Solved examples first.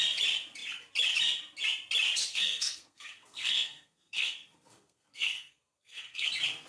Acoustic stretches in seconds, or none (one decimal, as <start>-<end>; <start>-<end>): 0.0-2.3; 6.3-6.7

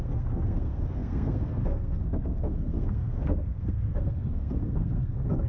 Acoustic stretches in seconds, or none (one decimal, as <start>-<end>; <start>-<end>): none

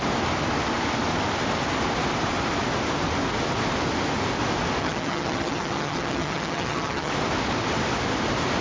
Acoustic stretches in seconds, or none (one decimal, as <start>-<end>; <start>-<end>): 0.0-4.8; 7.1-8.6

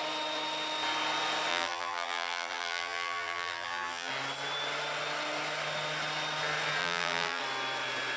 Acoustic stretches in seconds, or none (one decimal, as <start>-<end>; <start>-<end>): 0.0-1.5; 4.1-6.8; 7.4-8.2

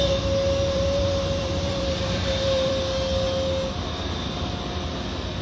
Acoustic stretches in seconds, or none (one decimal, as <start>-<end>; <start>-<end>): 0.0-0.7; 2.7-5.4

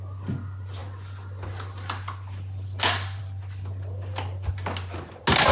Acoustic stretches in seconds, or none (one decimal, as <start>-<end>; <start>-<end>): 0.0-5.5